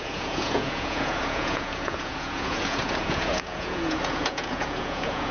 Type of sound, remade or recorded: remade